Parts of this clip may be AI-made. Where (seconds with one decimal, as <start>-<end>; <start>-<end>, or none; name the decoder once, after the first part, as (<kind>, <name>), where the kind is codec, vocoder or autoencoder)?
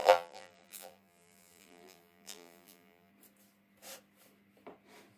0.0-3.1 (vocoder, BigVGAN v2)